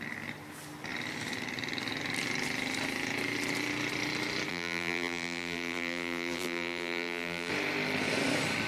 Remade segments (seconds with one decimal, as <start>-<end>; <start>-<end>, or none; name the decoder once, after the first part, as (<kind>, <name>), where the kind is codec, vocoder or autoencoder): 4.5-7.5 (vocoder, BigVGAN v2)